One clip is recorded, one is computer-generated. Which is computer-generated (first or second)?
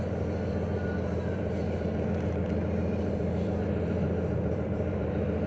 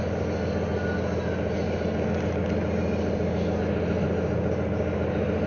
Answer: first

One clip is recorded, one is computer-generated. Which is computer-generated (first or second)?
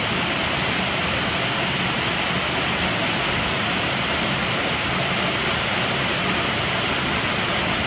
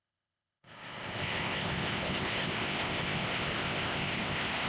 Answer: second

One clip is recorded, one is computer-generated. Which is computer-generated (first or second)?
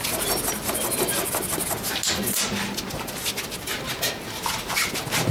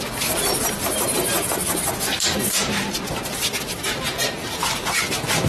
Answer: second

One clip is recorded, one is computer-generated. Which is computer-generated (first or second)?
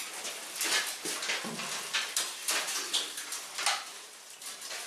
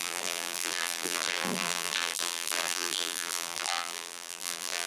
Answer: second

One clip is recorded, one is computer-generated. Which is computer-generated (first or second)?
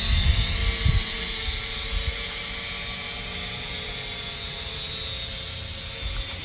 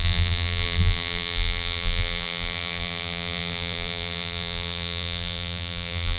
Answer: second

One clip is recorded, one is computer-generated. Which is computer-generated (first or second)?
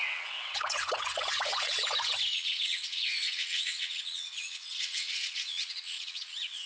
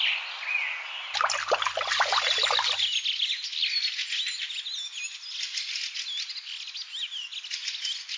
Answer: first